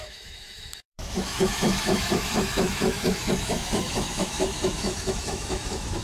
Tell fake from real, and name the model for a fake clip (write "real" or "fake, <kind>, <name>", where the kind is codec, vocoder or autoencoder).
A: fake, autoencoder, DAC-VAE